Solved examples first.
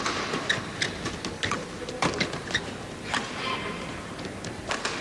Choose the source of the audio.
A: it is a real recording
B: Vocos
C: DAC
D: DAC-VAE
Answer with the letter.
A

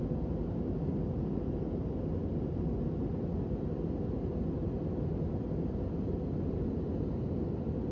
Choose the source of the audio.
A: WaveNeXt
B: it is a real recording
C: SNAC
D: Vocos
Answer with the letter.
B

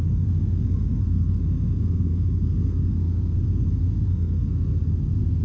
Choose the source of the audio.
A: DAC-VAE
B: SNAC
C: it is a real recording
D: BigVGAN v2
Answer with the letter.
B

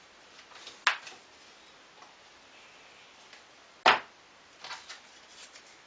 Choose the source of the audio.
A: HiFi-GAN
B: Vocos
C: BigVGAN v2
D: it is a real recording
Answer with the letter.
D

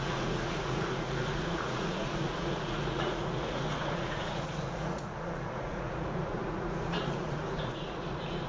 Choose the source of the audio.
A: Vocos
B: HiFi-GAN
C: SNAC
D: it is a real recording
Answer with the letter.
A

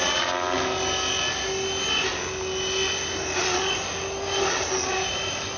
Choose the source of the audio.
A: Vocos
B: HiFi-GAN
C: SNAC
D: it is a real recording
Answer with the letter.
D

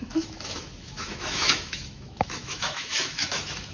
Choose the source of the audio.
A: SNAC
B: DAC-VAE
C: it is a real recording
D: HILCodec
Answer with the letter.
B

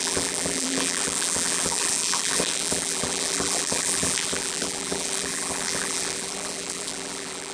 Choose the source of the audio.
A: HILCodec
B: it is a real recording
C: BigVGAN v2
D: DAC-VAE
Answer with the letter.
C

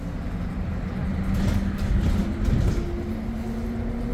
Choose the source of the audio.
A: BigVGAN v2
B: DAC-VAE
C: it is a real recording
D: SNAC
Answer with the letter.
C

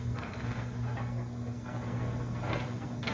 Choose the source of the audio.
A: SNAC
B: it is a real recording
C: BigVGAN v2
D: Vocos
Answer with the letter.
A